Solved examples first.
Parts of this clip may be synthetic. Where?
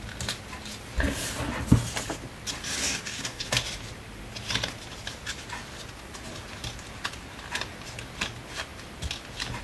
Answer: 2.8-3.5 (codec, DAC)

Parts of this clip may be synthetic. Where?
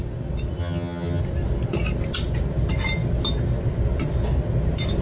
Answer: 0.6-1.2 (vocoder, HiFi-GAN)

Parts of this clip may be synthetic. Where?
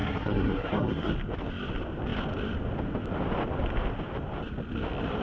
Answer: 0.0-1.1 (codec, SNAC)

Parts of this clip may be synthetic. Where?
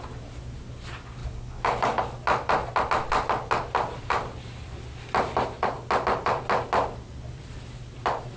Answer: 1.2-2.0 (codec, DAC)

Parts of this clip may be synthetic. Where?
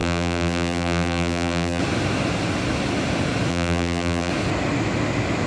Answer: 0.0-1.8 (vocoder, BigVGAN v2); 3.5-4.3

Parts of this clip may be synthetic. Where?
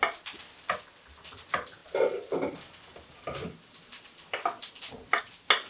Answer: none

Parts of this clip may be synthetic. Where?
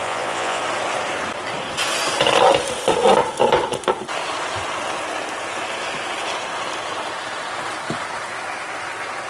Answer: 0.0-0.6 (vocoder, Vocos)